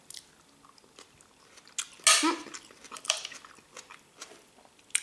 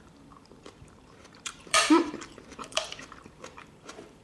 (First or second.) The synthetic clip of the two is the second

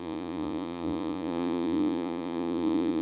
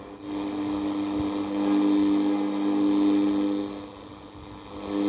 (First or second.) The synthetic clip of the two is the first